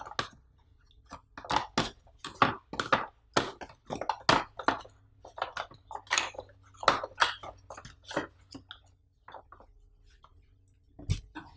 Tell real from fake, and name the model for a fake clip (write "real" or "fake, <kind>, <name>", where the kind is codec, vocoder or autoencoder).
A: real